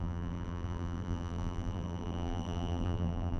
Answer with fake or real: fake